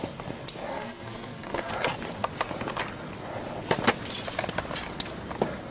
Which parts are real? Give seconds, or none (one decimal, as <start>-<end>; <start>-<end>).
0.0-0.7; 1.7-5.7